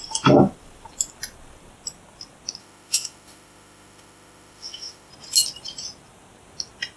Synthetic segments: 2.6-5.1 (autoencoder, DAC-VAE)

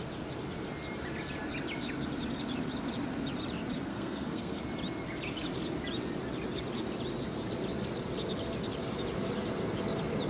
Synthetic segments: 3.9-4.6 (codec, SNAC)